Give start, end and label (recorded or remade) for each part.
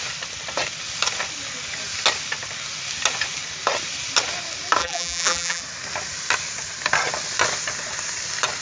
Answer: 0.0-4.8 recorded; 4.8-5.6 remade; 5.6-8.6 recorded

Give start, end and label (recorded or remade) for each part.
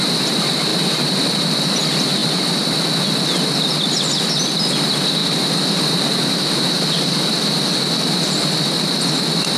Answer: 0.0-0.7 recorded; 0.7-1.4 remade; 1.4-5.2 recorded; 5.2-5.8 remade; 5.8-9.6 recorded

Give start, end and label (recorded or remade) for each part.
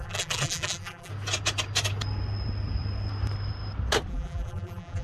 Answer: 0.0-1.1 remade; 1.1-4.1 recorded; 4.1-5.0 remade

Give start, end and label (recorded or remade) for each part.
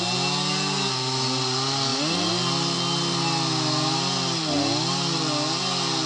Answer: 0.0-6.1 recorded